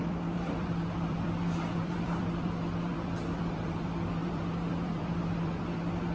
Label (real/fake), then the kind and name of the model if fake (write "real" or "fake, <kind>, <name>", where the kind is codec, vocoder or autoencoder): fake, vocoder, BigVGAN v2